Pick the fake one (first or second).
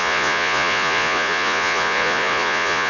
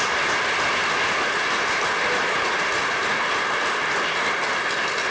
first